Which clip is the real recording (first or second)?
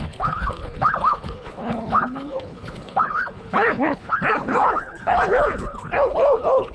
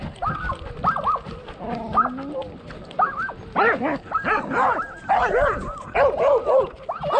second